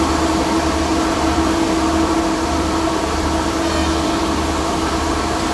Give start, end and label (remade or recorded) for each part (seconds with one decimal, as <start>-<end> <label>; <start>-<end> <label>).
0.0-0.9 recorded; 0.9-4.2 remade; 4.2-5.5 recorded